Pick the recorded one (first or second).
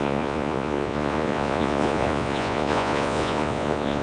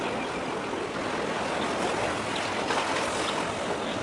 second